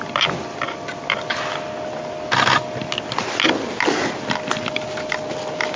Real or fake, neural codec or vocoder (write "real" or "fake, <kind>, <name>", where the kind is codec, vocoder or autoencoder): real